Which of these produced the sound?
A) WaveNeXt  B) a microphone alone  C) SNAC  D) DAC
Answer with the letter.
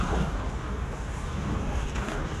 D